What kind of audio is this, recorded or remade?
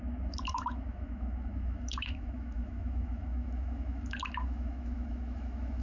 remade